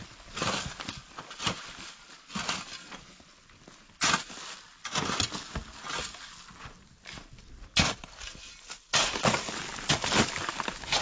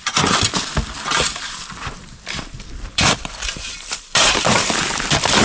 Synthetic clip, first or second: second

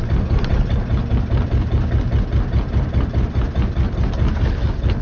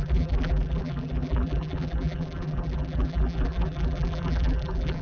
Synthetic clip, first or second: second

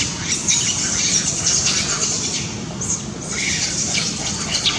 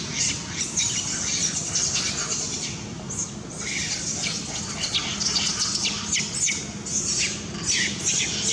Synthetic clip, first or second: first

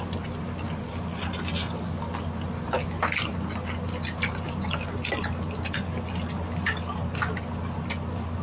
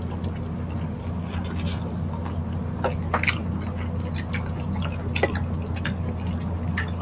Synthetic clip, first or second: first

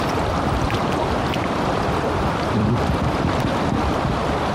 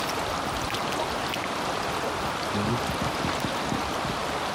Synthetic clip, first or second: first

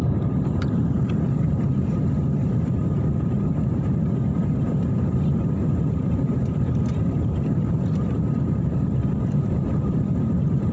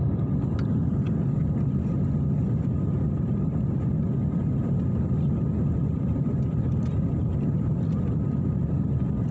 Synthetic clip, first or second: first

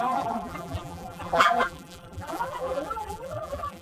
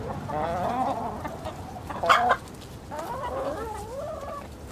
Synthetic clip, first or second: first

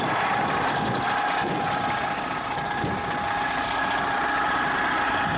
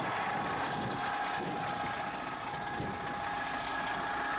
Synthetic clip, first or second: first